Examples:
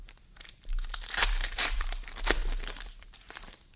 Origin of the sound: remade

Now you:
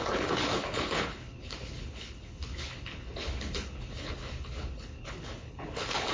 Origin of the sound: remade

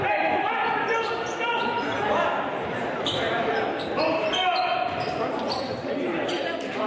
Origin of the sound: recorded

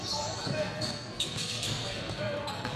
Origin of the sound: remade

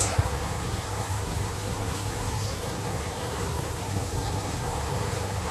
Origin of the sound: remade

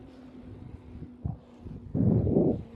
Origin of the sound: recorded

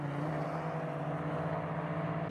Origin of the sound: recorded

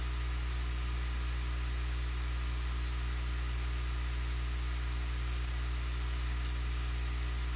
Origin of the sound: recorded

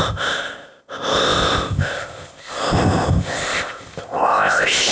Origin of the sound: remade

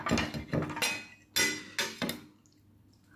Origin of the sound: recorded